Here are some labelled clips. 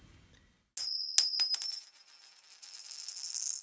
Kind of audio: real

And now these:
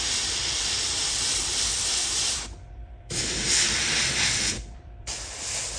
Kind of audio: fake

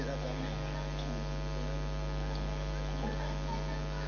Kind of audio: real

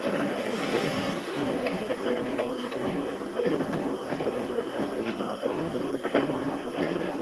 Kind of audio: fake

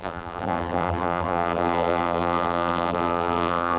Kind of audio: fake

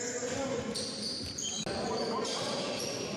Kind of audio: real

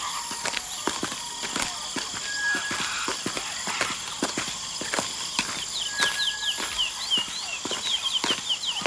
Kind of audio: real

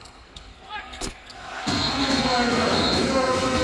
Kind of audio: fake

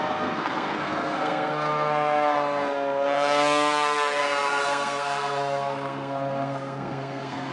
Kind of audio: fake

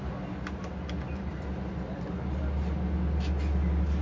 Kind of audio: real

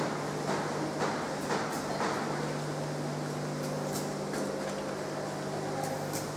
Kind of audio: real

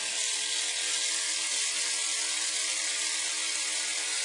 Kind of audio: real